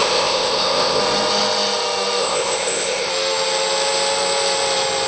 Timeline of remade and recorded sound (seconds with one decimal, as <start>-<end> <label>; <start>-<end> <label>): 0.0-1.0 remade; 1.0-2.2 recorded; 2.2-3.1 remade; 3.1-5.1 recorded